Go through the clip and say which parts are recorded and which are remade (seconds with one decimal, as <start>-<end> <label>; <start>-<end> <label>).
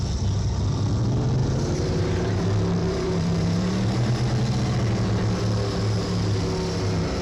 0.0-1.4 recorded; 1.4-2.4 remade; 2.4-2.8 recorded; 2.8-4.1 remade; 4.1-7.2 recorded